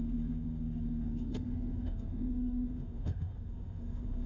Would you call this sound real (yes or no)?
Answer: no